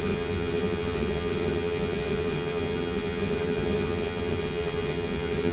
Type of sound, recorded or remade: remade